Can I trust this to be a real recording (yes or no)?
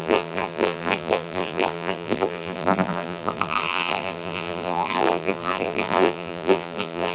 no